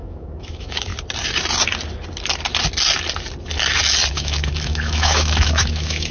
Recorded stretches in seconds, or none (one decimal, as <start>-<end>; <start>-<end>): 0.9-4.1